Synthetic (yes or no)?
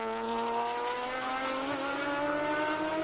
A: no